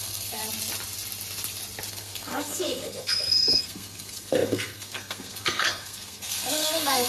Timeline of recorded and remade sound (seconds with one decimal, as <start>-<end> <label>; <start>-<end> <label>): 0.0-0.4 remade; 0.4-1.9 recorded; 1.9-7.1 remade